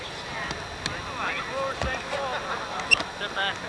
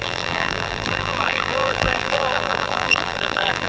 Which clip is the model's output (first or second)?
second